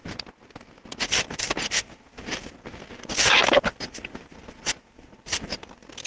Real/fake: real